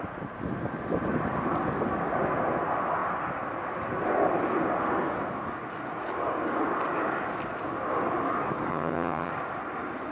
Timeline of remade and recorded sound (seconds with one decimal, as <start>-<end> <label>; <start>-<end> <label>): 0.0-8.7 recorded; 8.7-9.3 remade; 9.3-10.1 recorded